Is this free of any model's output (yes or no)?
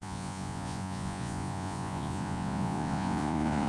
no